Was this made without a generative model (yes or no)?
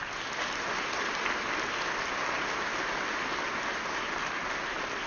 yes